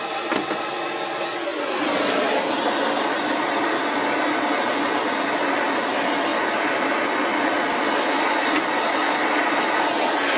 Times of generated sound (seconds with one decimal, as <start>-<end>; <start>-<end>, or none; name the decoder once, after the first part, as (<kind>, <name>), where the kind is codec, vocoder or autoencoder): none